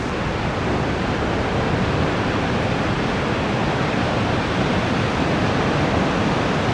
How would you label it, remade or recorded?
recorded